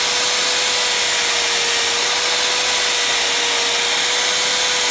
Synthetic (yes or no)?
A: no